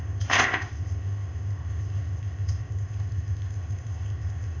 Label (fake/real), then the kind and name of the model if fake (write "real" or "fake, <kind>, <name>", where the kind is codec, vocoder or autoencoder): fake, codec, ZipCodec